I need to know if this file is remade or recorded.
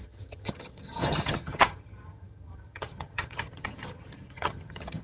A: remade